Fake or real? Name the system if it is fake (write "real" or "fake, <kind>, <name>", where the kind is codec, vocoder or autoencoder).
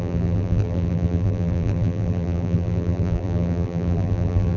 fake, vocoder, BigVGAN v2